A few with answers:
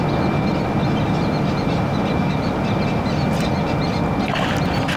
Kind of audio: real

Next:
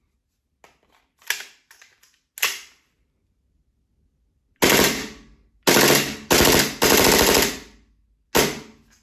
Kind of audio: real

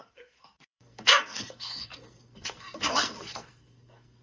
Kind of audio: fake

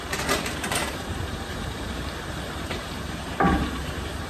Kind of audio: fake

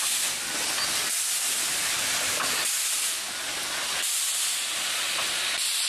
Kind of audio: real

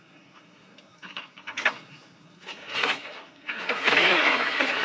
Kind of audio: fake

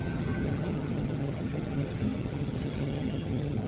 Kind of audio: fake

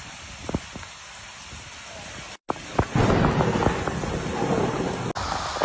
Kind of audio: real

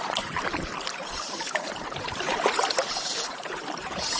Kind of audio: fake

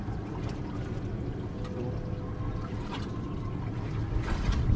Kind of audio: real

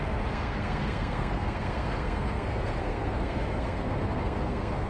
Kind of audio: fake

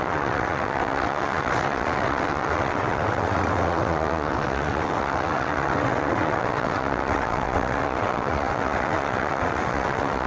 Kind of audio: fake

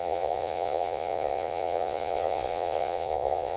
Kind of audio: fake